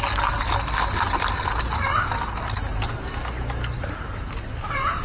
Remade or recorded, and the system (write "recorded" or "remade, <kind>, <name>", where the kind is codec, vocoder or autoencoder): recorded